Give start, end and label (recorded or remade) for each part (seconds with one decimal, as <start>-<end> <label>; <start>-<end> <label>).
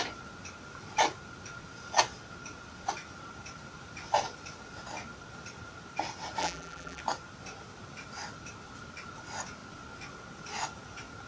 0.0-6.4 recorded; 6.4-7.0 remade; 7.0-11.3 recorded